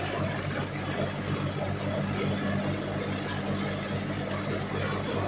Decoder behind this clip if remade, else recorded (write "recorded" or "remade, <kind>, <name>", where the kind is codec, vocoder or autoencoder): recorded